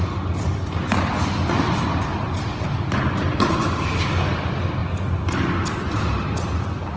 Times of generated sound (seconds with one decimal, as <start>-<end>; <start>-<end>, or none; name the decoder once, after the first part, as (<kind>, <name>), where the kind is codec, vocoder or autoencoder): none